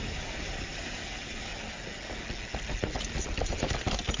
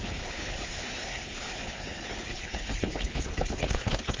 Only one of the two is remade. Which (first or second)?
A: second